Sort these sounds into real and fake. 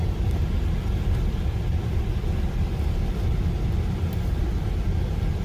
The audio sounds real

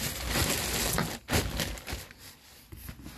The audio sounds real